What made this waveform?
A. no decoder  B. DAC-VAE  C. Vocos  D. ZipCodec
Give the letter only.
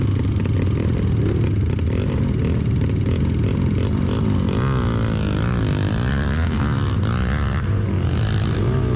A